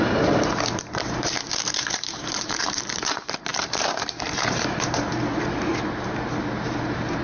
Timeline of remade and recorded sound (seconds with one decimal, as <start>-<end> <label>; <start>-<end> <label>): 0.0-5.7 remade; 5.7-6.4 recorded; 6.4-7.2 remade